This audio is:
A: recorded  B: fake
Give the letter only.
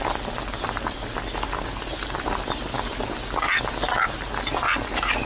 A